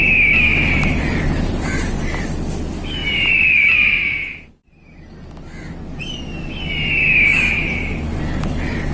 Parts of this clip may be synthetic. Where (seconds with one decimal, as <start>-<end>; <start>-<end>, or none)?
0.5-2.0; 3.0-4.5; 7.3-8.2